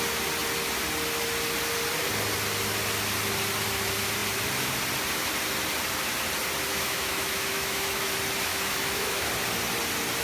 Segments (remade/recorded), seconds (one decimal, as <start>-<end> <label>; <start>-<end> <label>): 0.0-6.7 recorded; 6.7-8.1 remade; 8.1-8.5 recorded; 8.5-9.3 remade; 9.3-10.2 recorded